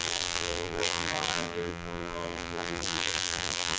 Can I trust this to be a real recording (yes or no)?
no